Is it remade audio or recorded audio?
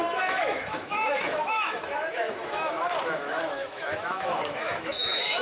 remade